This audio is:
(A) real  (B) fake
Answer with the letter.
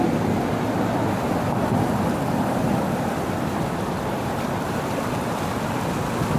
A